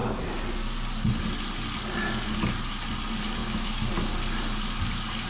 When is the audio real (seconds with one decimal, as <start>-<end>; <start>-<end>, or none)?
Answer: 0.0-3.4; 3.9-5.3